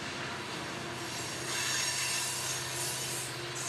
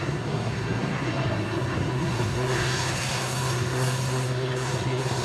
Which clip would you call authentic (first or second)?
first